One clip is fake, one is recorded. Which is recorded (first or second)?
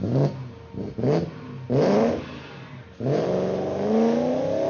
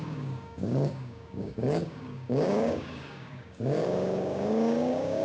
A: first